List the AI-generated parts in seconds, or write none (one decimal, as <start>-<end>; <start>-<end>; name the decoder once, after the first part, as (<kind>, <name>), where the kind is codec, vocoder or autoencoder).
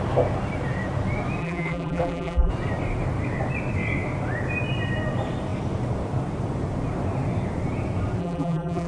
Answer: 1.4-2.5 (vocoder, BigVGAN v2); 8.2-8.9